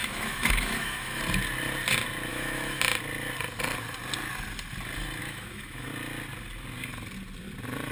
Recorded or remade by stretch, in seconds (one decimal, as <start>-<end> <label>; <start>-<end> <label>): 0.0-1.2 remade; 1.2-2.3 recorded; 2.3-2.8 remade; 2.8-5.2 recorded; 5.2-5.9 remade; 5.9-7.9 recorded